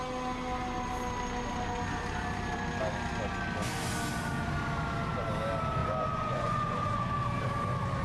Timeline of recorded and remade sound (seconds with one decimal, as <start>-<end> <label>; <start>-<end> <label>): 0.0-5.8 recorded; 5.8-7.1 remade; 7.1-8.0 recorded